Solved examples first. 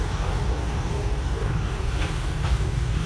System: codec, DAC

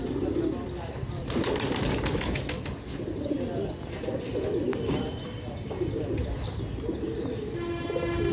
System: none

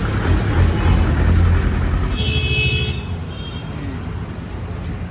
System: none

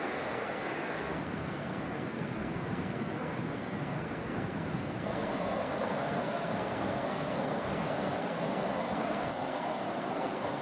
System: codec, SNAC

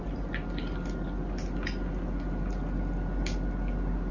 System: none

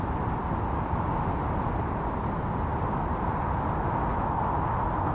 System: none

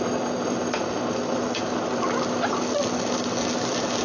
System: none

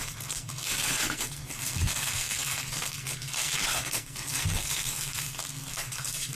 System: codec, SNAC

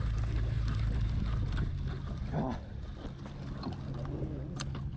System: none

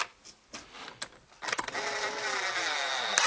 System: none